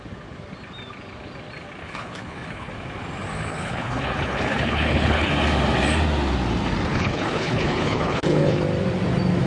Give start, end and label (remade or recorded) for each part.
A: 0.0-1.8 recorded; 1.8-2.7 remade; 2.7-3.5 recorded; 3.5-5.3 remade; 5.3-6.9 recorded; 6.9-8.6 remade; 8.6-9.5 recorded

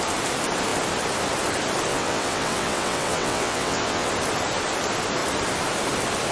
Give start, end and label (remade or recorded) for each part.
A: 0.0-1.9 recorded; 1.9-4.1 remade; 4.1-6.3 recorded